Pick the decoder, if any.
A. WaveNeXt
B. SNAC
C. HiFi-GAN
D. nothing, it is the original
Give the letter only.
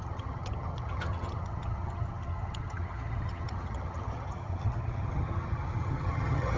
C